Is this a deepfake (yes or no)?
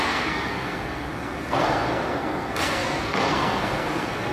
yes